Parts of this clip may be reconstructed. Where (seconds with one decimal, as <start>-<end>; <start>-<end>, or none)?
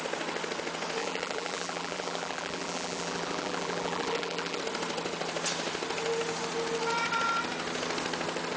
1.0-4.6